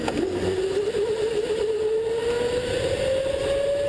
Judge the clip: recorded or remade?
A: recorded